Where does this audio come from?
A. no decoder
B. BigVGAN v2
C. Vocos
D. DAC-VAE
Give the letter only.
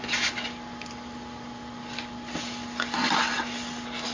A